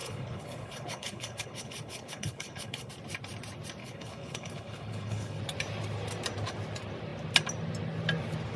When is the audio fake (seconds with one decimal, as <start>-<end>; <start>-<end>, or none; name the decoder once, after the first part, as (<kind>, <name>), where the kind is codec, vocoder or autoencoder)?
0.0-2.9 (codec, HILCodec); 3.8-5.4